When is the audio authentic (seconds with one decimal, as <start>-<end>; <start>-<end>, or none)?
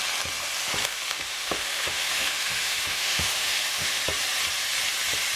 0.0-0.8; 4.0-5.4